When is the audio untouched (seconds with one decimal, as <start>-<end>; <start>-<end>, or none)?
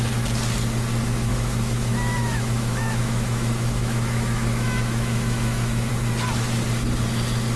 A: 0.0-1.3; 5.9-7.6